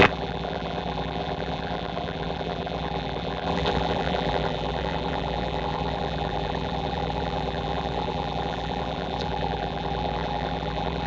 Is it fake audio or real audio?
fake